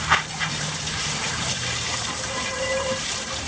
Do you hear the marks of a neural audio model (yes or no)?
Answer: yes